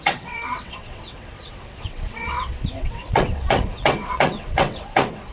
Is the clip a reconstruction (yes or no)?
yes